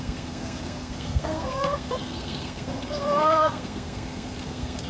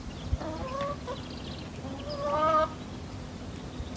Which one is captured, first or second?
second